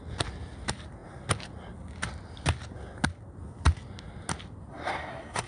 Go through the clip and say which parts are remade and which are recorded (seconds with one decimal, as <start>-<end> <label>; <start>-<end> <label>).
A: 0.0-4.7 recorded; 4.7-5.5 remade